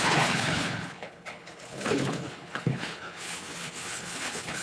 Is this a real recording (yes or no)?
no